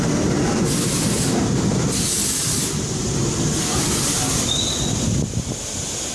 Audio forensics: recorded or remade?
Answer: recorded